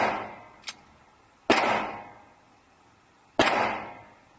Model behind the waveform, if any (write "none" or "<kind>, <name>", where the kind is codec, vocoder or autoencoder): none